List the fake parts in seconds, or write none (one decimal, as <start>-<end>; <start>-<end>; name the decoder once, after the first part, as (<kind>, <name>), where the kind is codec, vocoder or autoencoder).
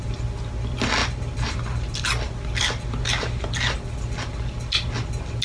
none